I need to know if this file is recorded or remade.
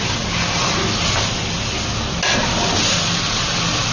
recorded